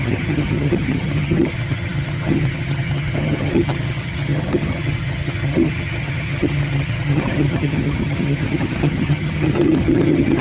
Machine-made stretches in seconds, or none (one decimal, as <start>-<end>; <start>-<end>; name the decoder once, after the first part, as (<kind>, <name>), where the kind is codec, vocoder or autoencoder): 0.0-10.4 (vocoder, HiFi-GAN)